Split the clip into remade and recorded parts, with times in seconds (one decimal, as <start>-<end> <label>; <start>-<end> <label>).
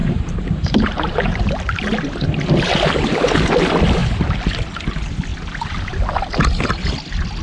0.0-1.6 remade; 1.6-7.4 recorded